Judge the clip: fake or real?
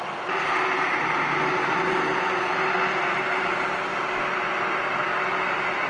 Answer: real